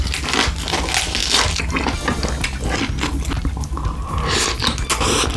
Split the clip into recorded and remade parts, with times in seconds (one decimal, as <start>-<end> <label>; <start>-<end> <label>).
0.0-5.4 recorded